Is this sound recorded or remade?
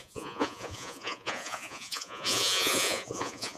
remade